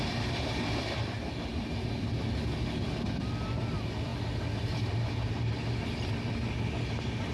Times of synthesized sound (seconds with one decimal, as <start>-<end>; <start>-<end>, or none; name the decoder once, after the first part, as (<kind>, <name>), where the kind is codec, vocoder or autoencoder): none